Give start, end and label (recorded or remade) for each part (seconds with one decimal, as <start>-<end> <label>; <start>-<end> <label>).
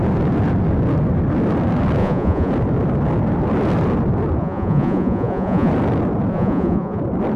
0.0-2.0 recorded; 2.0-2.5 remade; 2.5-4.4 recorded; 4.4-5.7 remade; 5.7-6.3 recorded; 6.3-7.0 remade; 7.0-7.4 recorded